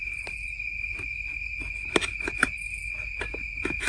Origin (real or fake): real